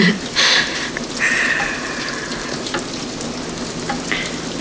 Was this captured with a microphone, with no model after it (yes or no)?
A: yes